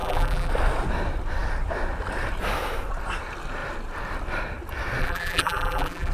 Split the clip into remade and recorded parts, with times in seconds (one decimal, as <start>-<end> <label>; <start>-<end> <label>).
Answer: 0.0-0.5 remade; 0.5-5.0 recorded; 5.0-6.1 remade